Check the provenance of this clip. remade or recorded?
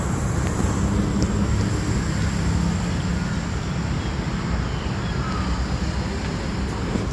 recorded